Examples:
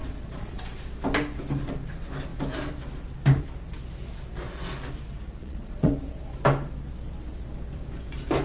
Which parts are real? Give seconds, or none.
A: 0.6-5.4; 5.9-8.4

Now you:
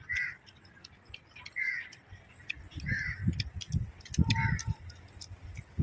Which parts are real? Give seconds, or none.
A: 0.0-5.8

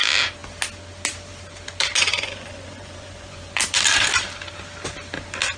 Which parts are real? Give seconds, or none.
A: 0.0-2.1; 3.6-5.6

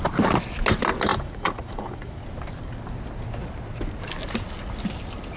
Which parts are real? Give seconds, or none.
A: 0.0-1.1; 2.2-5.4